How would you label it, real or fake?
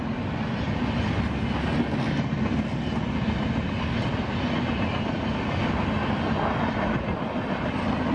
real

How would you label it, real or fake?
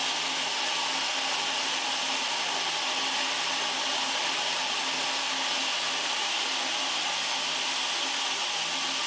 real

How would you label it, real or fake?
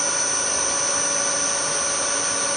real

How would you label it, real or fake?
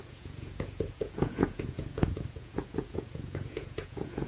fake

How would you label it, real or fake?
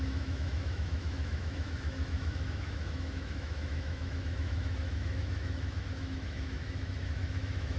fake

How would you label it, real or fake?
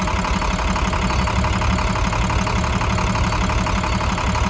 real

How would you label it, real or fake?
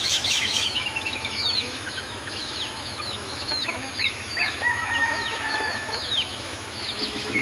fake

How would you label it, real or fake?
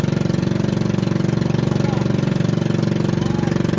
real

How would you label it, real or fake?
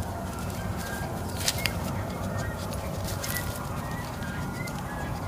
fake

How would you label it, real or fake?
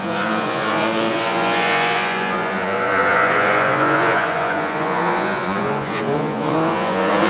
fake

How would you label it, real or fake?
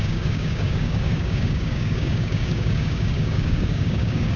fake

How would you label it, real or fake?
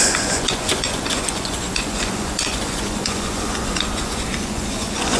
fake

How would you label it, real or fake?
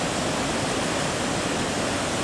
real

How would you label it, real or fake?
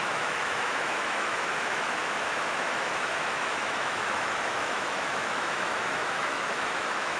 fake